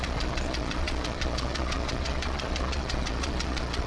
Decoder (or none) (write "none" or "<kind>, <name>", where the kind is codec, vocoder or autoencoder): vocoder, Vocos